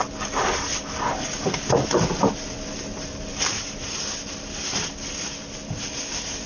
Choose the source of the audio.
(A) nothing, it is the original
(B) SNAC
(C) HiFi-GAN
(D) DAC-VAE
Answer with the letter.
A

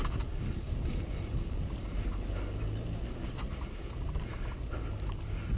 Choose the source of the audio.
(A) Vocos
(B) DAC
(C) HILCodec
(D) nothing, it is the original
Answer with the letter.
D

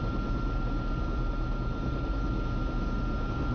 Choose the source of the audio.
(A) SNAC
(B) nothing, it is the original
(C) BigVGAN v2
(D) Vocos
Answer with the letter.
B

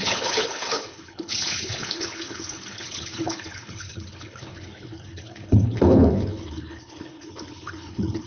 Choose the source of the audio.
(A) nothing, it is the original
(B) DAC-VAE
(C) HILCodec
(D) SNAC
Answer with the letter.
C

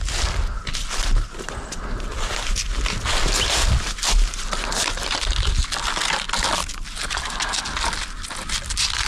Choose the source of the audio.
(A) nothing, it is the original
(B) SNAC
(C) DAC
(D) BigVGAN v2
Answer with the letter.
A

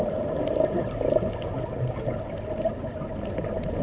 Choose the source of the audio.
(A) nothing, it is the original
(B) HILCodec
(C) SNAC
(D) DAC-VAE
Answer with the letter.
A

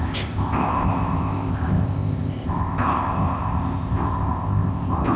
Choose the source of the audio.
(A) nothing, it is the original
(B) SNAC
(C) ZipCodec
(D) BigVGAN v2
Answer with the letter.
C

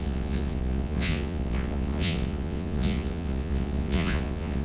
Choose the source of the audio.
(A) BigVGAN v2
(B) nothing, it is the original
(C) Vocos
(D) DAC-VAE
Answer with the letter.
C